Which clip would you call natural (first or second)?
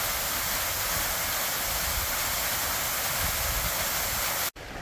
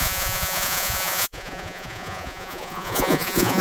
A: first